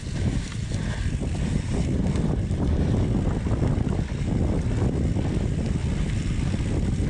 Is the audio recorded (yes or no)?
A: yes